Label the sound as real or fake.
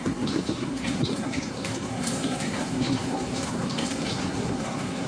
fake